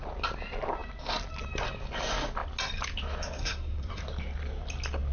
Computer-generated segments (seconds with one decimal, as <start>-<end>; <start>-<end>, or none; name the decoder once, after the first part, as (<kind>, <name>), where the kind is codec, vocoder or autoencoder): 3.4-4.0 (codec, SNAC)